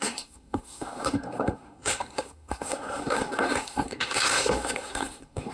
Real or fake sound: fake